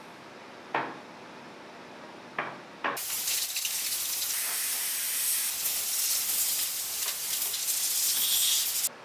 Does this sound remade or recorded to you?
recorded